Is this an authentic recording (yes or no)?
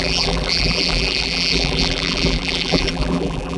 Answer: no